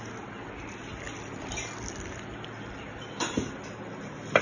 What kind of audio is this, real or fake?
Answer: real